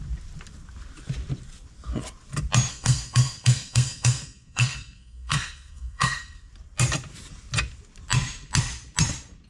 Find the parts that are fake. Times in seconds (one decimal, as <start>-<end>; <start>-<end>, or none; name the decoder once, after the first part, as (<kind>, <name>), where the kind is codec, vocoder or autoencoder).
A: 2.7-6.5 (codec, SNAC)